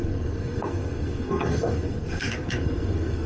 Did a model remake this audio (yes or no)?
yes